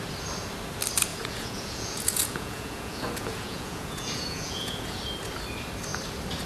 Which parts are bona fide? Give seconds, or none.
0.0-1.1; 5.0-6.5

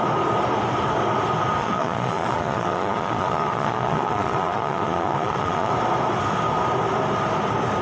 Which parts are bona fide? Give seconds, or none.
0.0-1.6; 5.7-7.8

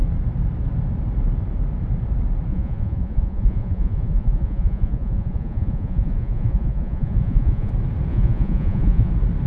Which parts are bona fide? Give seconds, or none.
0.0-2.5; 7.7-8.1; 9.1-9.5

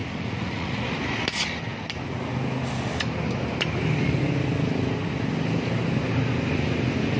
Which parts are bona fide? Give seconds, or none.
0.8-7.2

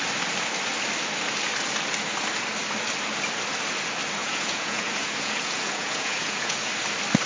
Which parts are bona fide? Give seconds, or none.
0.0-4.2; 6.7-7.3

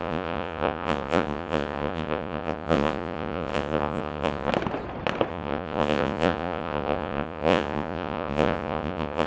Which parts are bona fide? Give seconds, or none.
4.5-5.3